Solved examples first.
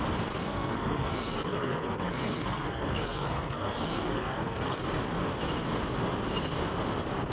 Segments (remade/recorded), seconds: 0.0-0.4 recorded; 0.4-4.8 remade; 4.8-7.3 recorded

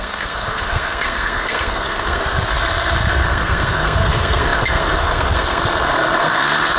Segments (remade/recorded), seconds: 0.0-2.2 remade; 2.2-3.3 recorded; 3.3-5.6 remade; 5.6-6.2 recorded; 6.2-6.8 remade

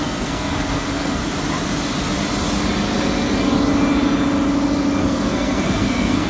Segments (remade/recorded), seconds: 0.0-1.2 remade; 1.2-5.0 recorded; 5.0-6.3 remade

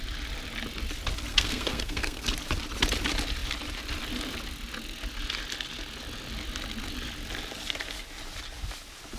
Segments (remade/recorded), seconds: 0.0-1.3 recorded; 1.3-2.3 remade; 2.3-9.2 recorded

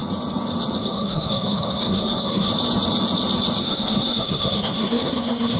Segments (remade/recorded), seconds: 0.0-0.8 recorded; 0.8-2.5 remade; 2.5-3.6 recorded; 3.6-5.6 remade

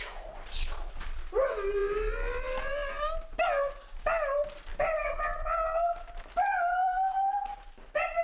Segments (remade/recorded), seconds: 0.0-8.2 recorded

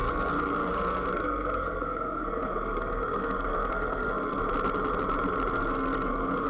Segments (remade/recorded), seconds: 0.0-4.4 remade; 4.4-5.5 recorded; 5.5-6.5 remade

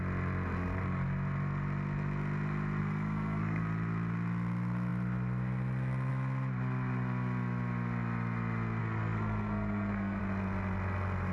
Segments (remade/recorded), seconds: 0.0-2.8 recorded; 2.8-3.6 remade; 3.6-8.8 recorded; 8.8-10.2 remade; 10.2-11.3 recorded